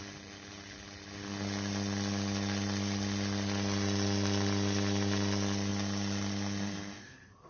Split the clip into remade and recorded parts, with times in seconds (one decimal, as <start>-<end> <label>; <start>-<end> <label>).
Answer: 0.0-7.5 recorded